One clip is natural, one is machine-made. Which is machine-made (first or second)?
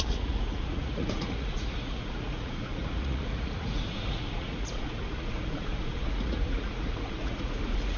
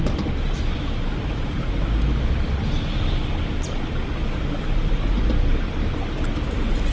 first